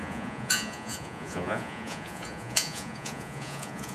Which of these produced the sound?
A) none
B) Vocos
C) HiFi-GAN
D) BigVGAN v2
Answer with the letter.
B